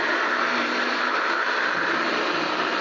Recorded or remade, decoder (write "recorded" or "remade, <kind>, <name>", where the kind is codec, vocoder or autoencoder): recorded